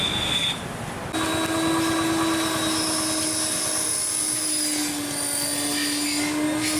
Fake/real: real